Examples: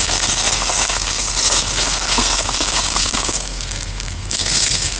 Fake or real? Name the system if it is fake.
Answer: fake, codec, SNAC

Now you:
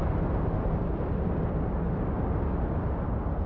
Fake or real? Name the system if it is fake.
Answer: real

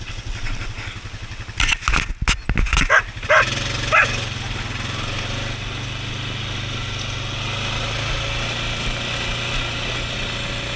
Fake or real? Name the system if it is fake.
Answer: real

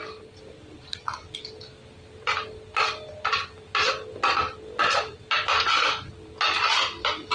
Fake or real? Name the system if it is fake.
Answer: real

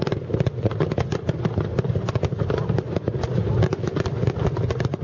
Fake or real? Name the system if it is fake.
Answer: real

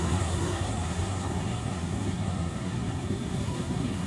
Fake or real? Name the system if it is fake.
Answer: fake, codec, SNAC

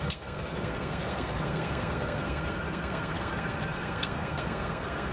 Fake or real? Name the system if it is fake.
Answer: fake, codec, SNAC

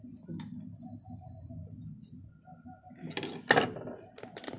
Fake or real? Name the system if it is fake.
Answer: real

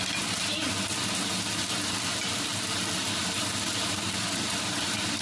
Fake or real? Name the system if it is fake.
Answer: real